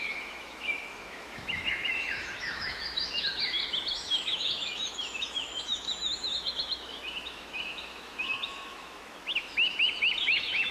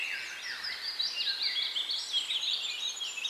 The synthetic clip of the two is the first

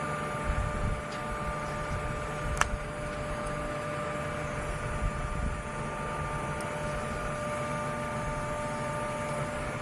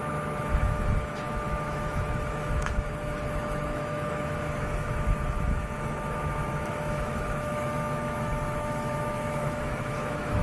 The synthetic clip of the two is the second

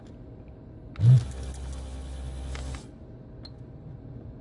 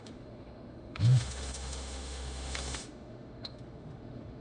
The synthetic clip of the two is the second